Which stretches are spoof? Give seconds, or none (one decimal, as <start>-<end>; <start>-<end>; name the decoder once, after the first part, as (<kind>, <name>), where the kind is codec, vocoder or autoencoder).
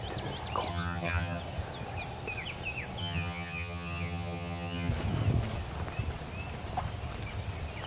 0.7-1.4 (vocoder, HiFi-GAN); 3.0-4.9